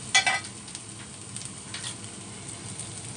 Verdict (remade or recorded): recorded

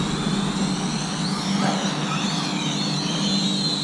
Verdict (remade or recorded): recorded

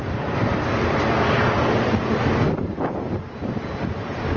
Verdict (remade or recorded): recorded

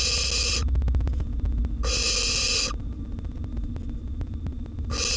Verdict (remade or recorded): recorded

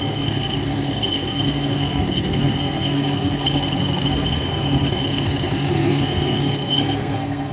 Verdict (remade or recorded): remade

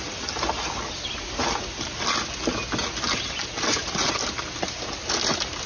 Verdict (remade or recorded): recorded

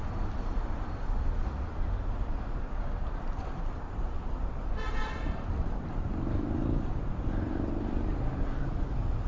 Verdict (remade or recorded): recorded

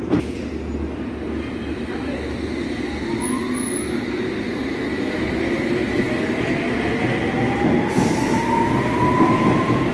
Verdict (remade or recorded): recorded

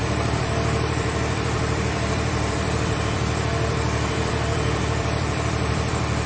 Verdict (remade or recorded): remade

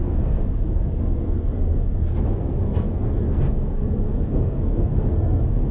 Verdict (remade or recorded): remade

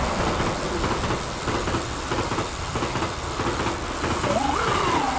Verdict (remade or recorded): recorded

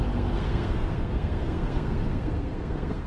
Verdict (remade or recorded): remade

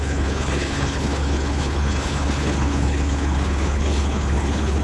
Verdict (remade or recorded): remade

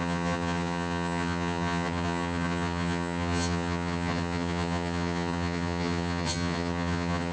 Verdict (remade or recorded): remade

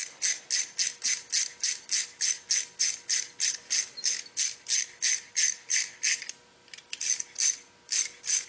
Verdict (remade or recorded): recorded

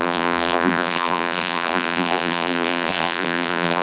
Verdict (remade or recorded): remade